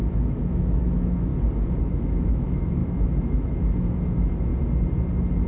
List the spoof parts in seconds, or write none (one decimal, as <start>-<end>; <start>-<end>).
0.0-1.3; 1.8-4.5